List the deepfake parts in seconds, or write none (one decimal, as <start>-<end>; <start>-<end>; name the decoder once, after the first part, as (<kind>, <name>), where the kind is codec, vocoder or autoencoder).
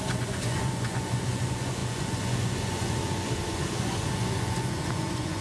0.0-5.4 (vocoder, Vocos)